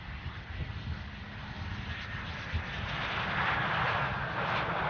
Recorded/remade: recorded